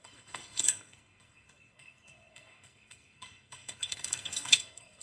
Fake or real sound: fake